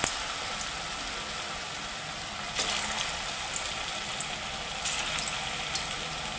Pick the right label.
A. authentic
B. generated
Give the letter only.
A